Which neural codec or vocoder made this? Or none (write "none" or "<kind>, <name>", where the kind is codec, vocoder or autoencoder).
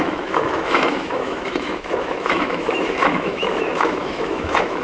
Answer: autoencoder, DAC-VAE